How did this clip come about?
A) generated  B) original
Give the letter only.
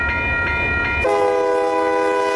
B